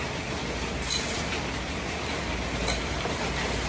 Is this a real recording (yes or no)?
yes